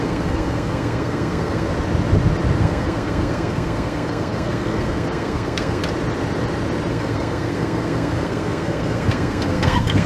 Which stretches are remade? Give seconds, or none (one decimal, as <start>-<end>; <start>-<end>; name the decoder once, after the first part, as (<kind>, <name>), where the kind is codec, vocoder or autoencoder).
0.0-1.7 (codec, SNAC); 2.6-5.8; 6.9-10.1